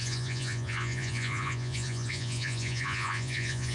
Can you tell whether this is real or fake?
fake